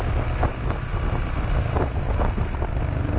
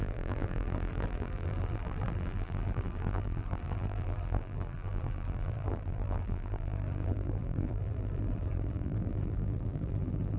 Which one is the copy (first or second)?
second